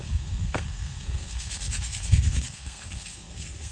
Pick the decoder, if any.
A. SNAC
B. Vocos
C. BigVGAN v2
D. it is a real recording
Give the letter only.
A